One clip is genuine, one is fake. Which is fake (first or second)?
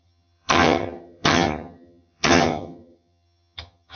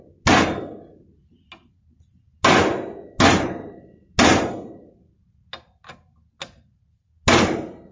first